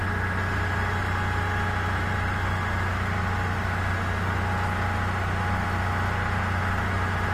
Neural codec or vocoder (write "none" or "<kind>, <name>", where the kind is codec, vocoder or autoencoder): none